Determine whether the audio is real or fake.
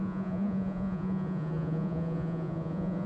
fake